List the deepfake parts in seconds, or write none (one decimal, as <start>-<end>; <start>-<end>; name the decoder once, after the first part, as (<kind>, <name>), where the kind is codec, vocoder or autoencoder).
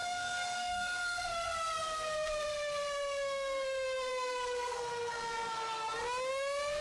0.0-5.8 (codec, SNAC); 6.3-6.8